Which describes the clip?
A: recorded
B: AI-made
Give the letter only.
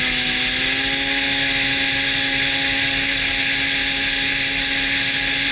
A